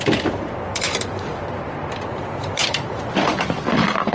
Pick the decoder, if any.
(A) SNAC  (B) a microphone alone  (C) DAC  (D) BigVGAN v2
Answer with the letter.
D